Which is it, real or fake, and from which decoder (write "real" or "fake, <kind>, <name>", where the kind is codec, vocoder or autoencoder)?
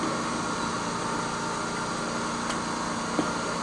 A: real